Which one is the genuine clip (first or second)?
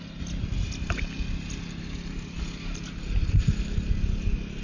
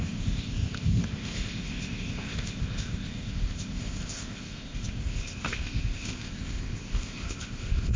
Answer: first